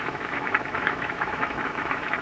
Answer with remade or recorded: remade